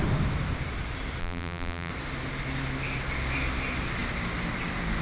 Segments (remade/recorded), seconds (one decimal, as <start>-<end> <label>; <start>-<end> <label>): 0.0-1.2 recorded; 1.2-1.9 remade; 1.9-5.0 recorded